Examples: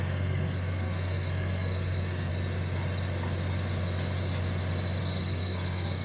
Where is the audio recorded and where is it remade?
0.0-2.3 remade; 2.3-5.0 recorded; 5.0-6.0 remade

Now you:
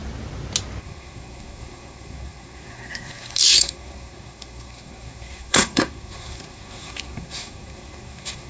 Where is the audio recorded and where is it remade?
0.0-0.8 recorded; 0.8-8.5 remade